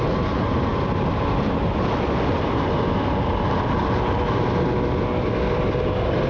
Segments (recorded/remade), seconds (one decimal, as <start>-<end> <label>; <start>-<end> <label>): 0.0-6.3 recorded